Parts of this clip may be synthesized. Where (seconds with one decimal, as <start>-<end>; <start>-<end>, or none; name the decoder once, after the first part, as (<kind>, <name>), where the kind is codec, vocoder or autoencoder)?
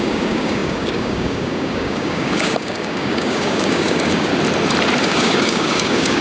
0.0-4.3 (codec, DAC); 5.0-6.2